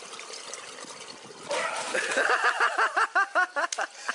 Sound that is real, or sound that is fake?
real